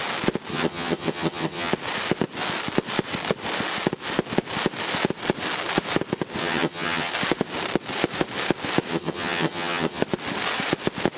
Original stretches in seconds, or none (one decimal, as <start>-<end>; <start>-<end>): 0.0-0.5; 1.7-6.4; 7.1-8.9; 10.0-11.2